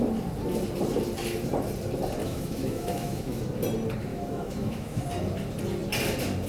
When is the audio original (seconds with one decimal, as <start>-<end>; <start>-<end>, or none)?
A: 0.0-2.2; 3.4-4.1; 5.0-6.5